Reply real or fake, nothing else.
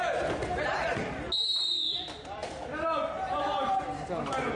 real